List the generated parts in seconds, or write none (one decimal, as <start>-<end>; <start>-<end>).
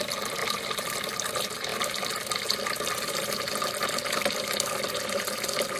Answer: none